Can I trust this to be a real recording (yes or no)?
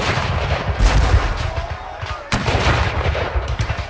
no